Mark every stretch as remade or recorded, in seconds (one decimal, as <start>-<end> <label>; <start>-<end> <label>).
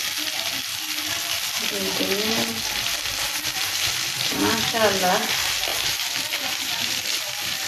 0.0-0.7 recorded; 0.7-1.7 remade; 1.7-5.7 recorded; 5.7-6.6 remade; 6.6-7.7 recorded